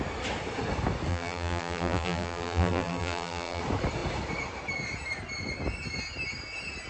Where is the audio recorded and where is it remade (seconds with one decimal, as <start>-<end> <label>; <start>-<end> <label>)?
0.0-1.1 recorded; 1.1-3.6 remade; 3.6-6.9 recorded